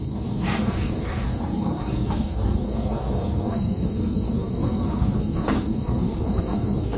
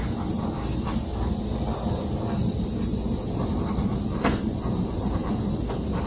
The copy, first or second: first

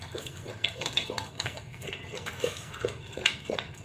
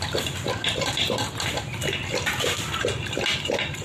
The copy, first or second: first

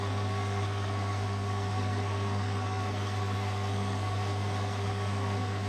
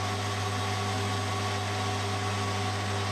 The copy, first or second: first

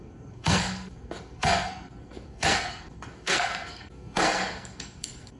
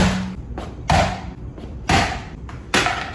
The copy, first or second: first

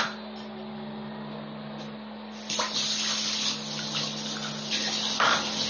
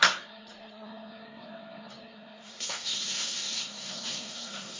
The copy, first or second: second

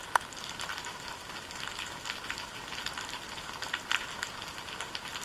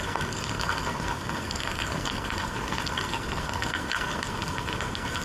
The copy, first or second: second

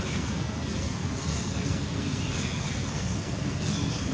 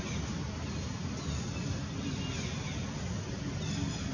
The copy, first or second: first